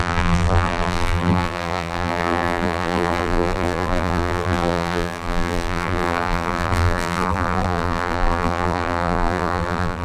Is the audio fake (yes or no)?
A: yes